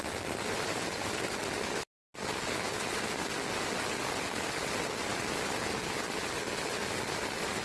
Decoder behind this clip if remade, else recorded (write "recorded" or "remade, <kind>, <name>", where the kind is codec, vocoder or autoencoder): recorded